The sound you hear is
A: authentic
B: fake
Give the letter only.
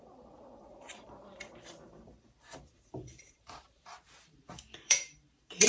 B